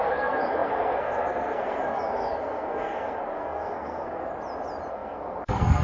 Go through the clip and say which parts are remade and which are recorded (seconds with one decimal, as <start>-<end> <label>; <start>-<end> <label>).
0.0-4.3 remade; 4.3-4.9 recorded; 4.9-5.8 remade